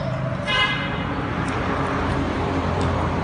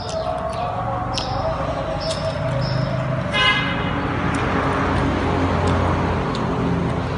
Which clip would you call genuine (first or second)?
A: second